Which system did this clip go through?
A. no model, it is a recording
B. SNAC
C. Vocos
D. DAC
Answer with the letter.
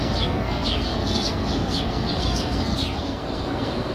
B